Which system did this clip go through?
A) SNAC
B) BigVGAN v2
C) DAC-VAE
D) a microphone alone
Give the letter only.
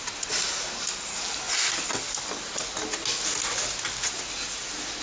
D